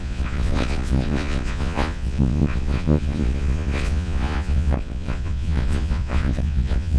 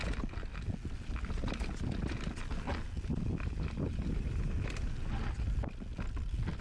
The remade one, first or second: first